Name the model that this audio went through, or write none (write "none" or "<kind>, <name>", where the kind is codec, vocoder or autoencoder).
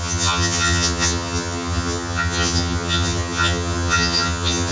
vocoder, HiFi-GAN